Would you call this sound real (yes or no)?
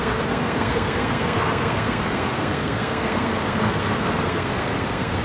no